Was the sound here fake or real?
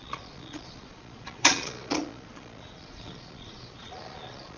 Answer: fake